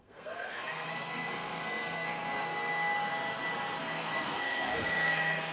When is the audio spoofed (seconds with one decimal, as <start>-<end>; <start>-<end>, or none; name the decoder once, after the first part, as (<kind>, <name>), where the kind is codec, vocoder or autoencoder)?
0.0-3.1 (codec, SNAC); 3.8-5.5